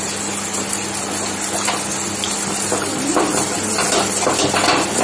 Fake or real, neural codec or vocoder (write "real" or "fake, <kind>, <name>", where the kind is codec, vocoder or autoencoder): real